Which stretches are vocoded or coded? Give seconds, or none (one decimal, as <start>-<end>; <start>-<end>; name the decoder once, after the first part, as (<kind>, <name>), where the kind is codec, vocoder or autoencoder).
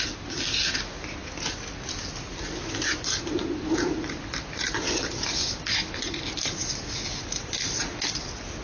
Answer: 1.2-5.8 (vocoder, BigVGAN v2)